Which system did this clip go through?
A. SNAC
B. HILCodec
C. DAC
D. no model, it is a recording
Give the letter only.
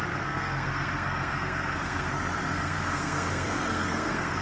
A